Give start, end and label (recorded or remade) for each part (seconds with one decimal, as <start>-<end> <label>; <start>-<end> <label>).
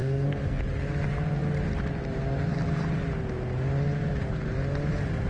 0.0-0.6 remade; 0.6-5.3 recorded